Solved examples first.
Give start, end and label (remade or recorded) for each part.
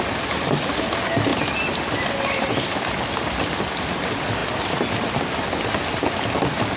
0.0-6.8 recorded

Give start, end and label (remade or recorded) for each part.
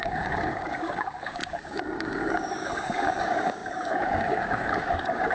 0.0-5.3 remade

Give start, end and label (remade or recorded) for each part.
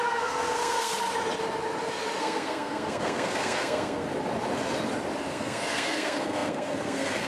0.0-0.9 remade; 0.9-2.2 recorded; 2.2-4.1 remade; 4.1-5.3 recorded; 5.3-7.3 remade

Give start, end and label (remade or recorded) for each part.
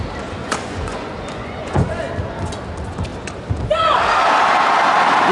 0.0-0.4 recorded; 0.4-2.0 remade; 2.0-5.3 recorded